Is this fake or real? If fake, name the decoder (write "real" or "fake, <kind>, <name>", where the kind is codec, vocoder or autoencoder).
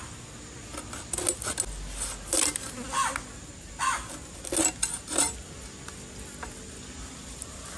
real